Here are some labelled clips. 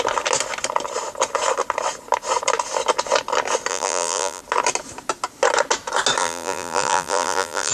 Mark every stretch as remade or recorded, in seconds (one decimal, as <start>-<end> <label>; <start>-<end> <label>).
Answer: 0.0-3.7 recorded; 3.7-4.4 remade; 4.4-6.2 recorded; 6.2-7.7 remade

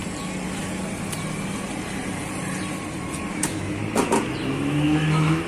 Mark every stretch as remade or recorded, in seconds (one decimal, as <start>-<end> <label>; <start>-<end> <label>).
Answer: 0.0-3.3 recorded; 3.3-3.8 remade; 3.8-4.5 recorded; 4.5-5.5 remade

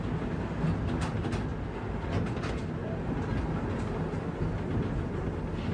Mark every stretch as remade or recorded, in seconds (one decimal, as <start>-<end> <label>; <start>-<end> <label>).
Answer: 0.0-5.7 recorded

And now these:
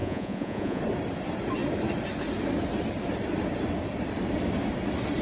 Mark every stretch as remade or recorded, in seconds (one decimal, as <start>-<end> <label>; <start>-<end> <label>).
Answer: 0.0-0.8 remade; 0.8-5.2 recorded